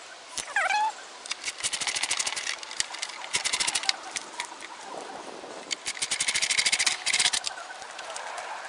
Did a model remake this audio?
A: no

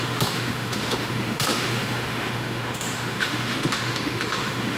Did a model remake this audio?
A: yes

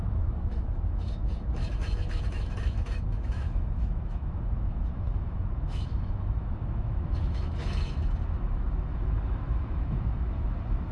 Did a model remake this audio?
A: yes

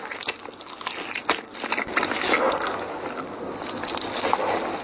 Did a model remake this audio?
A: no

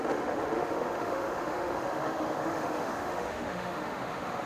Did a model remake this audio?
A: yes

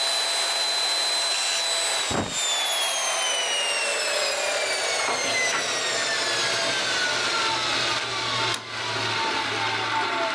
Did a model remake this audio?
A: no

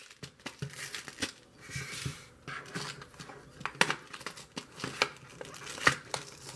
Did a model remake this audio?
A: no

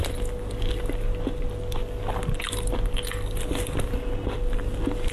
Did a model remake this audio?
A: no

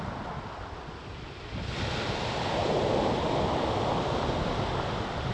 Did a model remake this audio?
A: no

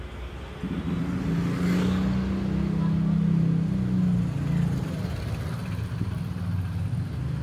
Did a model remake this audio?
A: no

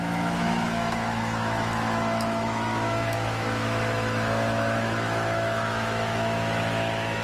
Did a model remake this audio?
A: yes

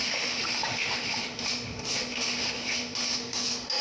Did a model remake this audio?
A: yes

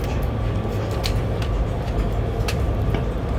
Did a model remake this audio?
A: no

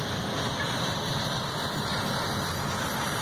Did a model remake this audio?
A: no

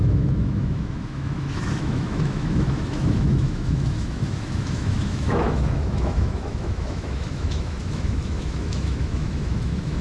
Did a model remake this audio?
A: yes